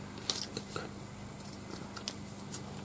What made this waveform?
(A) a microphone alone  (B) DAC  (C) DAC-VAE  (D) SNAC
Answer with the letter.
A